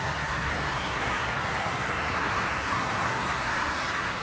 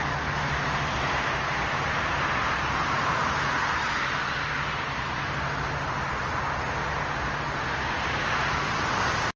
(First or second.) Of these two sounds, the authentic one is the second